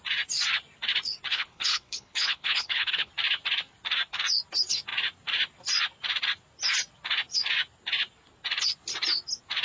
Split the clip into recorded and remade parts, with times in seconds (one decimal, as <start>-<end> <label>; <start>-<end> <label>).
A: 0.0-1.3 recorded; 1.3-3.1 remade; 3.1-9.6 recorded